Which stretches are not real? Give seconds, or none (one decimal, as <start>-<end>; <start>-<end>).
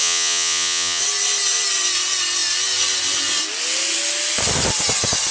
0.0-1.0